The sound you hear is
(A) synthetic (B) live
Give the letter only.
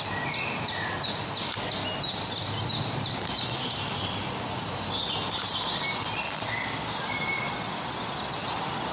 B